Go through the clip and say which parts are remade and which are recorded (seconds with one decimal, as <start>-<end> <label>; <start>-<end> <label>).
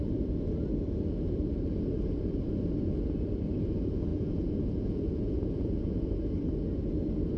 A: 0.0-4.1 recorded; 4.1-6.1 remade; 6.1-7.4 recorded